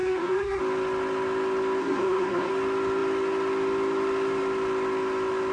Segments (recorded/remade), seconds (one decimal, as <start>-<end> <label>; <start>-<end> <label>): 0.0-0.6 remade; 0.6-1.8 recorded; 1.8-2.5 remade; 2.5-5.5 recorded